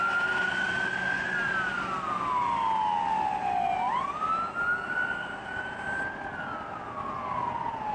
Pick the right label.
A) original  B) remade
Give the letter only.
A